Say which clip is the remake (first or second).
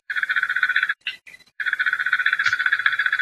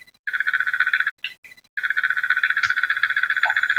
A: first